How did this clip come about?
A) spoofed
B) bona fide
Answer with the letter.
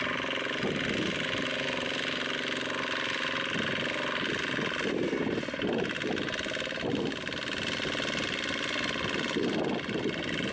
B